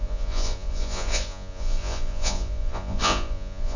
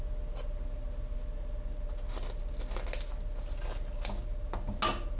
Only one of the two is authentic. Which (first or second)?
second